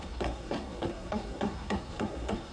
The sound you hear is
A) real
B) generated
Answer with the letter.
B